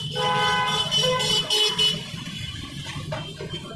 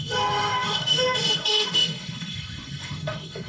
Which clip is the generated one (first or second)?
second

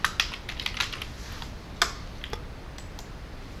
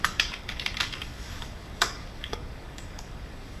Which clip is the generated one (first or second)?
second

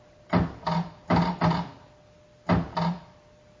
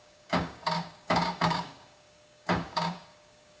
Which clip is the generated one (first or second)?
second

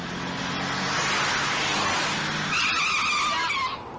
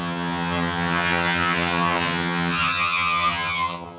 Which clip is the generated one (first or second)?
second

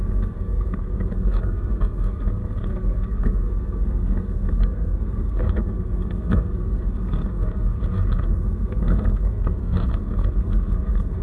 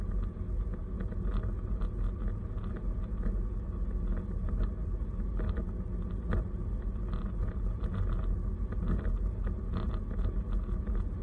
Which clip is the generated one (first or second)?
first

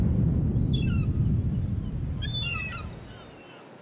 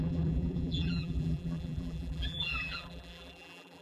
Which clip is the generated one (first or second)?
second